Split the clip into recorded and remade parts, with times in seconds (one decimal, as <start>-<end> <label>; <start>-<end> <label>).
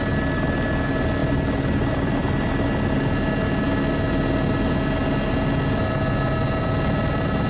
0.0-7.5 recorded